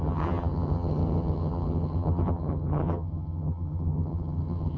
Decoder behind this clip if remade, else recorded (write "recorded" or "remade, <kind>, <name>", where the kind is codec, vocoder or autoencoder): remade, vocoder, HiFi-GAN